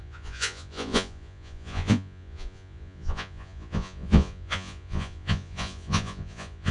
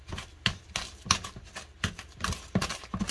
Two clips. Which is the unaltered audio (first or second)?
second